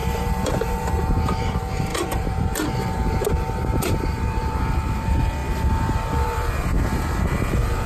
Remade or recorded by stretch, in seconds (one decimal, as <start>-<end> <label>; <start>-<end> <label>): 0.0-7.9 remade